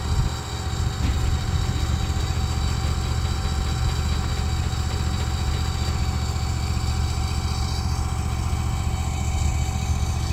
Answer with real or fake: real